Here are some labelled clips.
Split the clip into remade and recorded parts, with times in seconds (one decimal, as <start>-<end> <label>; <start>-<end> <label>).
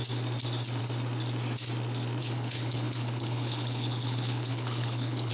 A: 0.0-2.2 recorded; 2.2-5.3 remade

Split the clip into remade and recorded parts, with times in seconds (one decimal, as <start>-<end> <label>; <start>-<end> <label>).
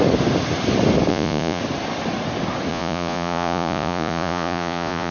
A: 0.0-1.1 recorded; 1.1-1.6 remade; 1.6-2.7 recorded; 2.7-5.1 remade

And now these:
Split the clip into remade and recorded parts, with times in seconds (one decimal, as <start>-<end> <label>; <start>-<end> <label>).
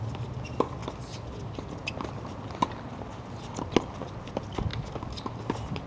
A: 0.0-5.9 recorded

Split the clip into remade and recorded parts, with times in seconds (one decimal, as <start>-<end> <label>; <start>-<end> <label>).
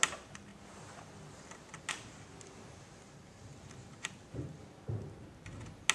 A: 0.0-0.5 recorded; 0.5-1.9 remade; 1.9-3.5 recorded; 3.5-5.3 remade; 5.3-5.9 recorded